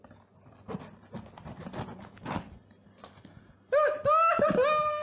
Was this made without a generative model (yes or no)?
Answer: yes